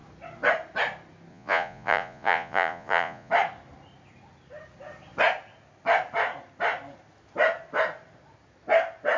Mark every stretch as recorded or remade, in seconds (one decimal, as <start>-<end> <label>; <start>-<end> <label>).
0.0-1.3 recorded; 1.3-3.3 remade; 3.3-9.2 recorded